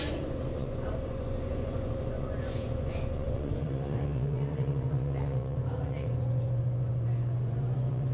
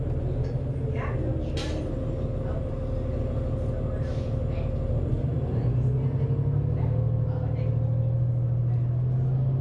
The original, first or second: second